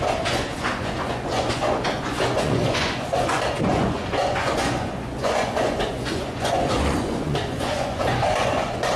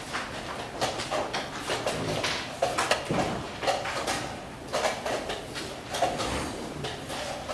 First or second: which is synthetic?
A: first